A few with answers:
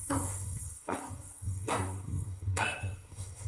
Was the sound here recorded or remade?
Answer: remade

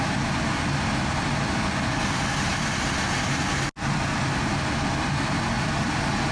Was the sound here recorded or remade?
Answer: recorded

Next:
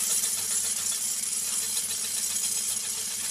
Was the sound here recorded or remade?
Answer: recorded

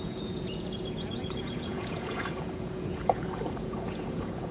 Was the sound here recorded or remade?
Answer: remade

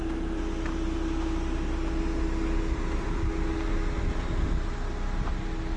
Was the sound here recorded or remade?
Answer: recorded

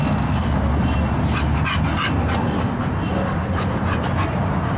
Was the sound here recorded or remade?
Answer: recorded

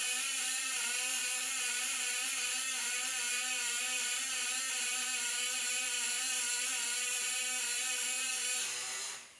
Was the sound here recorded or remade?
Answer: remade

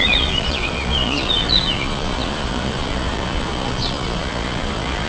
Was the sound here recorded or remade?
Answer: remade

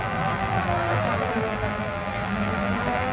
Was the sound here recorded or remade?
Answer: remade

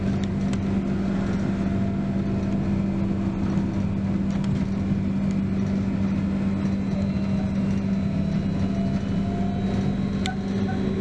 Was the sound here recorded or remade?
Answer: recorded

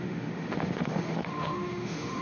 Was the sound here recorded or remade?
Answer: remade